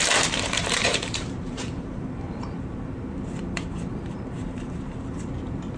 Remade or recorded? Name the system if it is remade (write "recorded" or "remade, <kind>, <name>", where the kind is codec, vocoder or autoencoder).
remade, vocoder, BigVGAN v2